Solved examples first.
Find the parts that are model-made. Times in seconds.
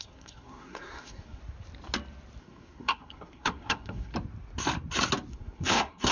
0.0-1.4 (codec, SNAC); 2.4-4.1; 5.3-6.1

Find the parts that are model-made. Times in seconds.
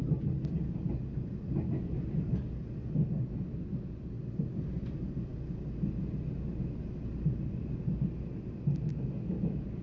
none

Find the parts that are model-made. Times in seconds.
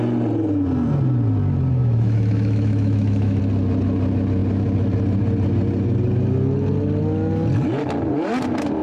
1.8-3.4 (autoencoder, DAC-VAE)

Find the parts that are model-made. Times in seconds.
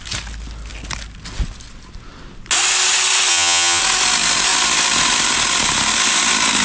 3.3-3.8 (vocoder, HiFi-GAN)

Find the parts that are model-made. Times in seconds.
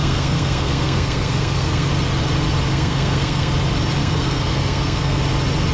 0.0-1.9 (codec, SNAC); 2.7-3.5; 4.0-5.2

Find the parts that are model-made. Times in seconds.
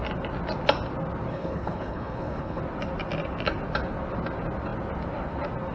1.3-2.6 (codec, HILCodec)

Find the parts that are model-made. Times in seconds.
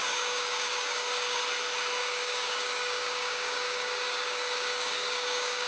0.0-1.4 (codec, DAC); 2.0-5.7